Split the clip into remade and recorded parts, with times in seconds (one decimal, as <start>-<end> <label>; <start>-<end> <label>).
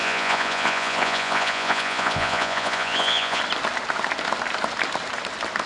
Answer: 0.0-3.4 remade; 3.4-5.7 recorded